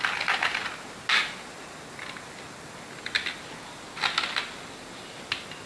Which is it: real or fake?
real